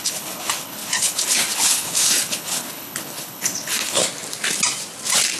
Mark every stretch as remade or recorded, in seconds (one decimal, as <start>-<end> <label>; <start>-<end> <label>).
0.0-4.0 remade; 4.0-5.4 recorded